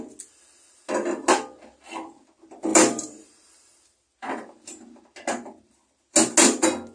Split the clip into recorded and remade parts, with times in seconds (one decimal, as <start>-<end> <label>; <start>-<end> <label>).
0.0-6.9 recorded